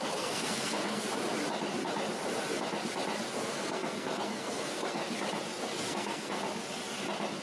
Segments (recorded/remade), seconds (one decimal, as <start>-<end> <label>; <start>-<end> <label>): 0.0-1.1 remade; 1.1-3.3 recorded; 3.3-5.0 remade; 5.0-5.7 recorded; 5.7-6.4 remade; 6.4-7.4 recorded